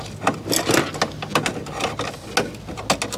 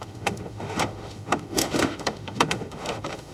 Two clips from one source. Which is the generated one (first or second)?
second